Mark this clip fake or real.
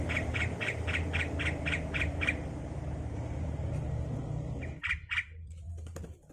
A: fake